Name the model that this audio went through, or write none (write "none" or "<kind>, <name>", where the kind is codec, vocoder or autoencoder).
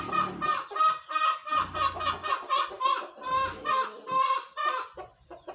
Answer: none